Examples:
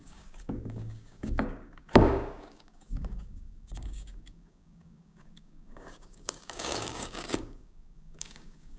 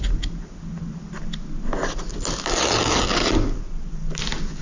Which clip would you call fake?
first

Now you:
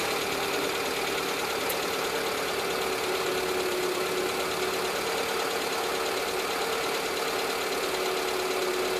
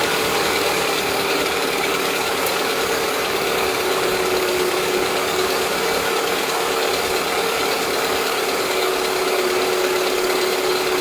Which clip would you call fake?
second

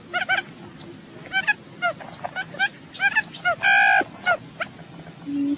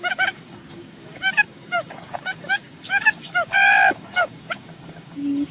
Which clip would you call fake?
second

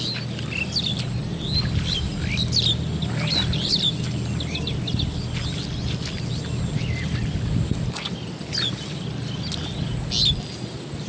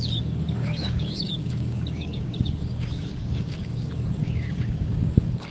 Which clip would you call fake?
second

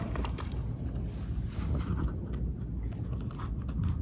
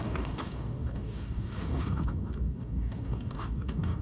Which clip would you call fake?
second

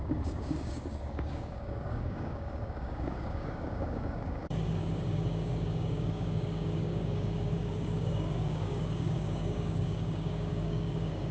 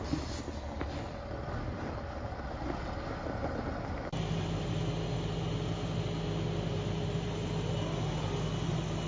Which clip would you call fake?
first